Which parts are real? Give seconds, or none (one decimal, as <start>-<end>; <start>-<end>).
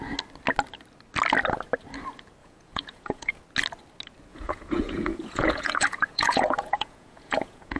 0.0-2.4; 3.4-4.3